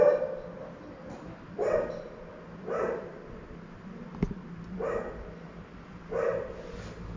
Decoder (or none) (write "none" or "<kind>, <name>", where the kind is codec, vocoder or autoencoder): none